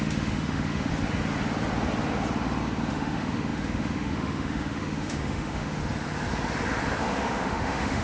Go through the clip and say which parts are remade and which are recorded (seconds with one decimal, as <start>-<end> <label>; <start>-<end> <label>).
0.0-0.9 remade; 0.9-2.9 recorded; 2.9-5.8 remade; 5.8-7.0 recorded; 7.0-8.0 remade